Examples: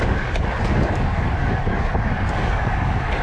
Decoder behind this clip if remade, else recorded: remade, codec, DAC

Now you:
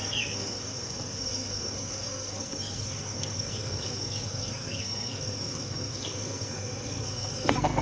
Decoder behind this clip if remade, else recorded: remade, codec, SNAC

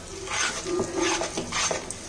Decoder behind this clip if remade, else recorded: recorded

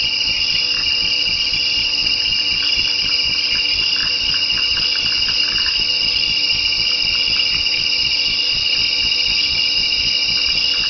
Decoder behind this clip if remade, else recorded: recorded